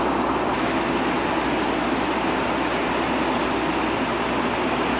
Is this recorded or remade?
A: recorded